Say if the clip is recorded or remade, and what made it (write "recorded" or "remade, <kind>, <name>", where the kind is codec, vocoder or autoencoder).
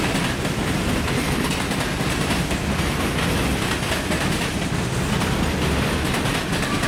recorded